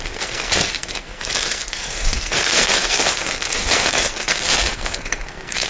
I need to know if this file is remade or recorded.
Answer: remade